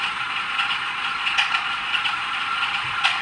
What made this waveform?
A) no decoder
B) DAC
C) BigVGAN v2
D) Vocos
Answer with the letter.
D